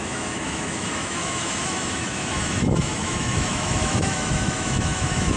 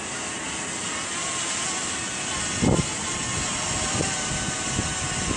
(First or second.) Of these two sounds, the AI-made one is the first